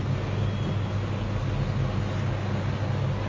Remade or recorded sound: recorded